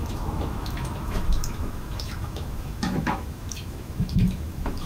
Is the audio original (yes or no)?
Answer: no